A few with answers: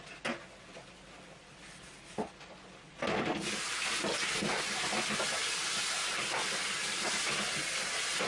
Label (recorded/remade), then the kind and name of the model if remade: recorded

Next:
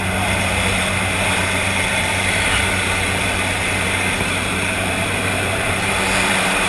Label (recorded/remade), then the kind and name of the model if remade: remade, vocoder, BigVGAN v2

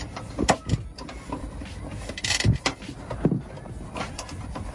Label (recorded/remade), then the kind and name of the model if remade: remade, vocoder, BigVGAN v2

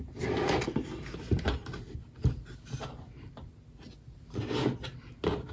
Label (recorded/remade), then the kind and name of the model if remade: recorded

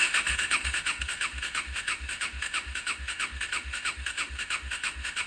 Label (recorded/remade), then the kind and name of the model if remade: remade, autoencoder, DAC-VAE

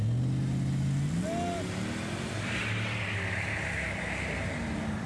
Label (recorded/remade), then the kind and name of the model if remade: recorded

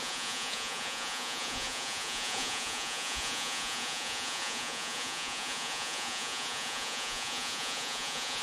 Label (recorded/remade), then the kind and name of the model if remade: remade, vocoder, Vocos